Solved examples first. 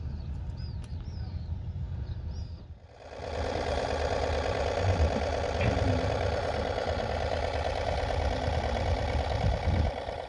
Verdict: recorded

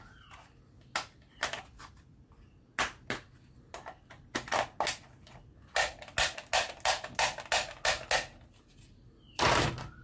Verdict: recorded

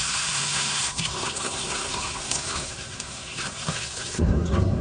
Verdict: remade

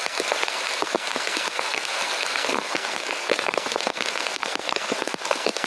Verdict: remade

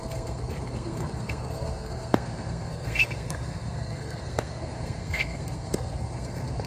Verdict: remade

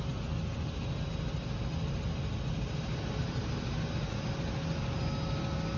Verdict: recorded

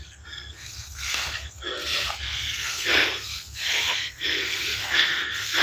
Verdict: remade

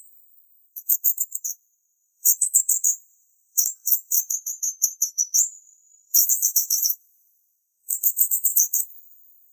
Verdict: remade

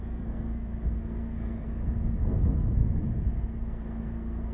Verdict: remade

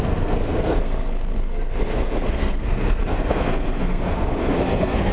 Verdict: remade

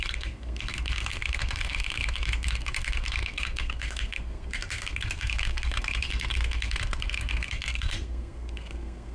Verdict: remade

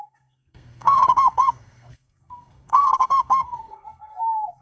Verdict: remade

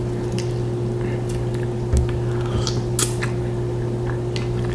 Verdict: recorded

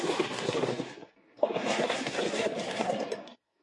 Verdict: remade